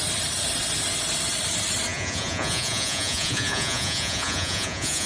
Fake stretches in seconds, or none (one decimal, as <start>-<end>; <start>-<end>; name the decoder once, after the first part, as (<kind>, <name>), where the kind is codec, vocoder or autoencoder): 1.9-5.1 (vocoder, Vocos)